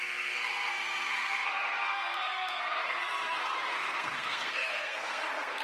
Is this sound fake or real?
fake